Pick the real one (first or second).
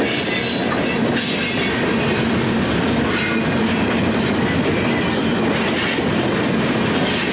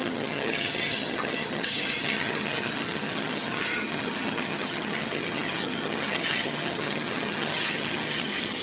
first